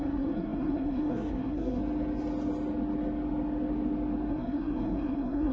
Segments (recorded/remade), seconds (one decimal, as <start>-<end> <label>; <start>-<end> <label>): 0.0-1.8 remade; 1.8-4.3 recorded; 4.3-5.5 remade